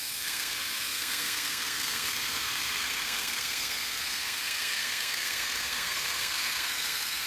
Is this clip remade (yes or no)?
yes